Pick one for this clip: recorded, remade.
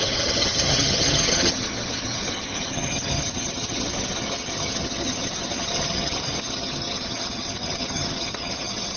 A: remade